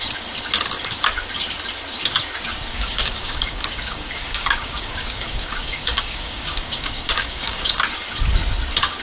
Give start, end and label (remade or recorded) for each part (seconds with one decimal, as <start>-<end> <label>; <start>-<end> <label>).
0.0-2.7 recorded; 2.7-7.8 remade; 7.8-9.0 recorded